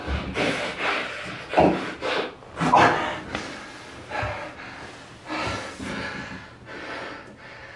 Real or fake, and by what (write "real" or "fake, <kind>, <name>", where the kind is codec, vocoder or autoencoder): real